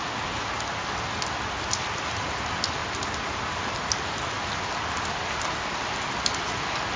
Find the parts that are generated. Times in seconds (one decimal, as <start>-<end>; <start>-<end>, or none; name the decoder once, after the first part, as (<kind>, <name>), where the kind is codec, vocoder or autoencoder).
none